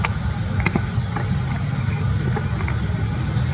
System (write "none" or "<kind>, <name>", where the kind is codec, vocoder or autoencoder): none